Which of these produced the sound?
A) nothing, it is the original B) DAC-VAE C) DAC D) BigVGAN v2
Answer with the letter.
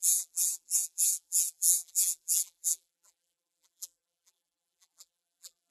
D